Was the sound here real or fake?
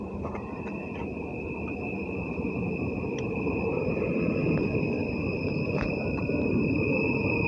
fake